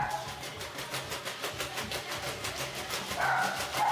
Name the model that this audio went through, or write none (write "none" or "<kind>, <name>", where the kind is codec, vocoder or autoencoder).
none